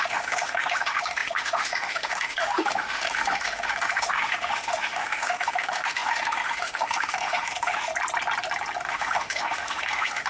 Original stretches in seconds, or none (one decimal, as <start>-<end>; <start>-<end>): 7.9-8.9